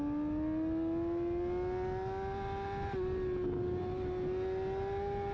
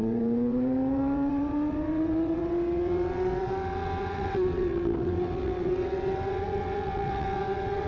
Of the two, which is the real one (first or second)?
first